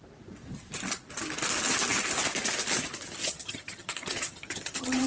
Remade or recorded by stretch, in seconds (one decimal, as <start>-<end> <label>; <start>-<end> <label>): 0.0-3.2 recorded; 3.2-5.1 remade